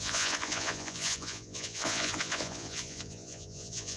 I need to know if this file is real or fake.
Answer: fake